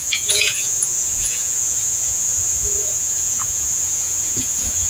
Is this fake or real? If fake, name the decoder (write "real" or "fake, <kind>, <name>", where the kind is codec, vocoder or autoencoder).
fake, vocoder, Vocos